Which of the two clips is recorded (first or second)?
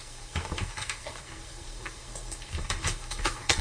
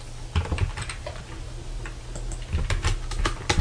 second